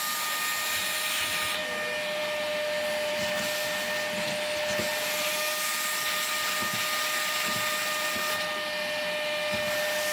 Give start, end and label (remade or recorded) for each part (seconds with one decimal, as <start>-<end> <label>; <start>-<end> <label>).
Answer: 0.0-10.1 recorded